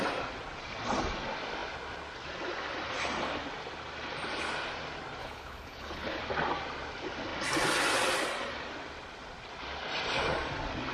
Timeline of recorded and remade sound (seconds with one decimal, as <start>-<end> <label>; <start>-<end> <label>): 0.0-5.2 recorded; 5.2-6.2 remade; 6.2-10.9 recorded